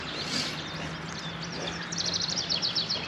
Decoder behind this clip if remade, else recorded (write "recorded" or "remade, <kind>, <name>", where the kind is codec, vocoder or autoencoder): recorded